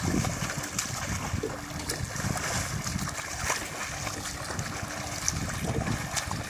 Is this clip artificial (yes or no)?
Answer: no